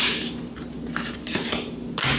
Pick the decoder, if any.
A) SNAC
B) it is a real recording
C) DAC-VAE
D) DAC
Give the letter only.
B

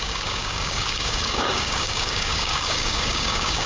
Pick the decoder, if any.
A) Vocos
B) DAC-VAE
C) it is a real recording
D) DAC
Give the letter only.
D